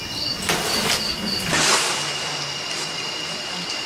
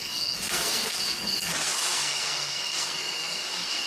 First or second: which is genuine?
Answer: first